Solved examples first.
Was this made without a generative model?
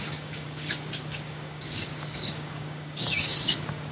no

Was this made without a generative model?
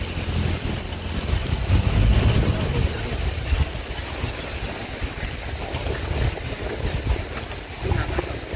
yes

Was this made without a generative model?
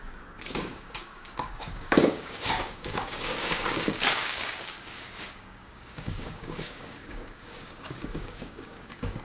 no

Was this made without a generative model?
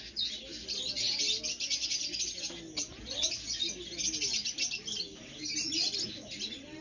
yes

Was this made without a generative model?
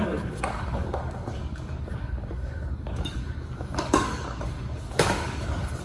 no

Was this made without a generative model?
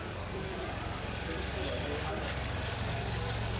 no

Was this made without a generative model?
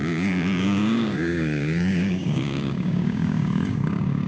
no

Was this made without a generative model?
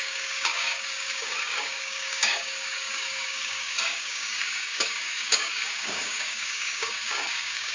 no